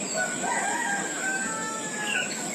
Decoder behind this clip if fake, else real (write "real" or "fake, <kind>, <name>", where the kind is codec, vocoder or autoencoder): fake, autoencoder, DAC-VAE